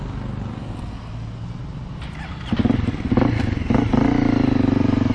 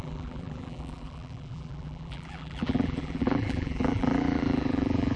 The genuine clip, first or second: first